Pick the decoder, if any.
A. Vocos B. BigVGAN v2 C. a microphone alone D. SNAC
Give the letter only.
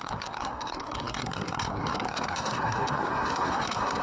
D